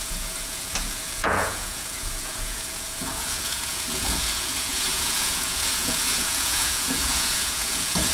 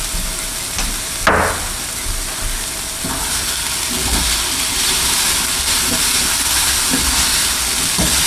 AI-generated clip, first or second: first